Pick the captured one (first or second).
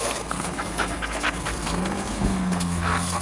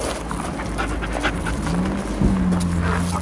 second